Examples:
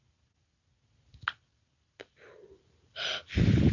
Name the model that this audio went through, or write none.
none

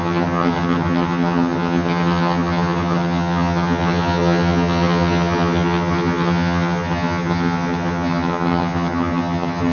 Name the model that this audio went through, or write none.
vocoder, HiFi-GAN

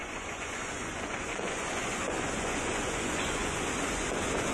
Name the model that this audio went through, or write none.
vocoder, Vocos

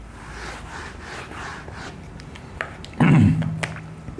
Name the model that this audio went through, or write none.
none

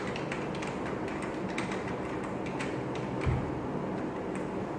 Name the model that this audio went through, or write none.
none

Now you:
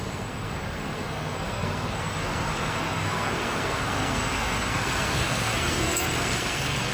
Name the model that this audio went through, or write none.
codec, SNAC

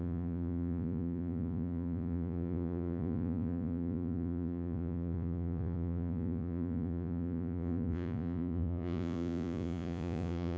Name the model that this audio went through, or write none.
vocoder, Vocos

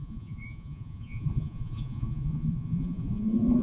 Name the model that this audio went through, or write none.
vocoder, Vocos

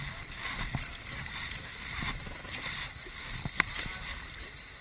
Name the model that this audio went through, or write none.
none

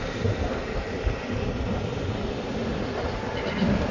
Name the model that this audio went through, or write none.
none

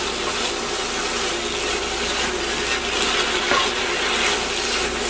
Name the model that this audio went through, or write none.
none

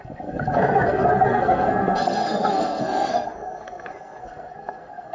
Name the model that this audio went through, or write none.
codec, SNAC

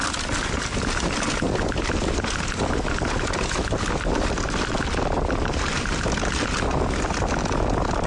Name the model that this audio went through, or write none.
vocoder, BigVGAN v2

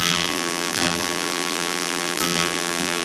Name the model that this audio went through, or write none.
vocoder, BigVGAN v2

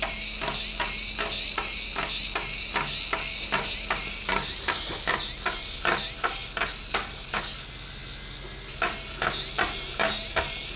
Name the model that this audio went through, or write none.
none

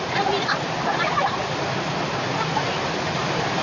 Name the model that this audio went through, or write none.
none